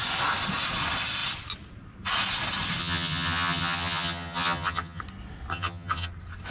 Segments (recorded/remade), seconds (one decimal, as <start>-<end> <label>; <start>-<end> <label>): 0.0-2.8 recorded; 2.8-5.0 remade; 5.0-5.5 recorded; 5.5-6.1 remade; 6.1-6.5 recorded